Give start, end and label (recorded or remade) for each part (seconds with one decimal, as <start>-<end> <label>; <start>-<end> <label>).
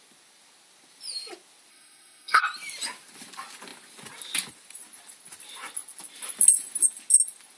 0.0-1.7 recorded; 1.7-2.4 remade; 2.4-7.6 recorded